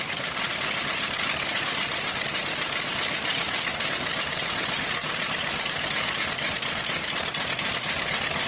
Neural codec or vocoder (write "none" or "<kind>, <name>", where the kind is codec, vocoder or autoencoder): none